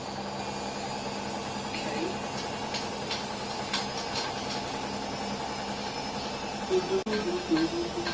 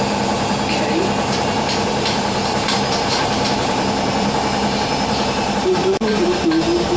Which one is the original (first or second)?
first